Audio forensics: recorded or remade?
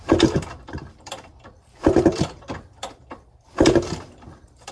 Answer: remade